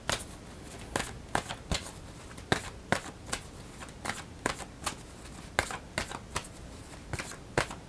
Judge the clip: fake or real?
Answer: real